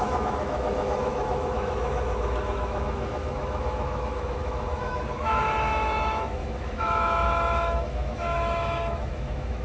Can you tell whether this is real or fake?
fake